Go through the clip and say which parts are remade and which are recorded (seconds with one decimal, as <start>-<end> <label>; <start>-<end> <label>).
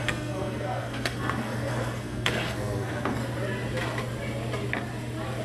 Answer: 0.0-3.2 remade; 3.2-5.4 recorded